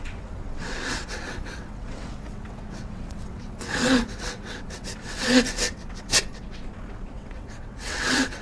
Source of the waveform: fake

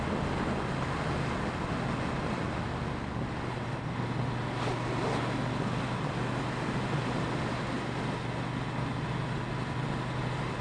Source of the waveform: real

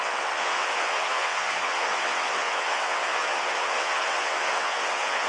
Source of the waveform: fake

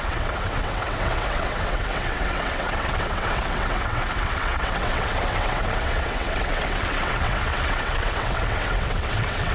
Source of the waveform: fake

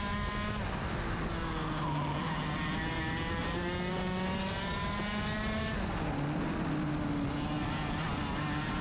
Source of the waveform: real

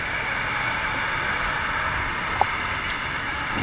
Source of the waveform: real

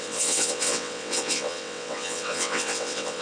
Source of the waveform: fake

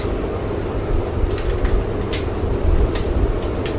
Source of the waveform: real